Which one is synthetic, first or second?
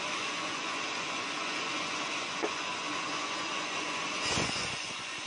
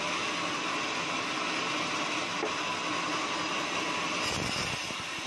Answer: first